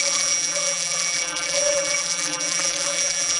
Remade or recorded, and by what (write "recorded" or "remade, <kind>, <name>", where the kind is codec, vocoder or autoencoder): remade, vocoder, BigVGAN v2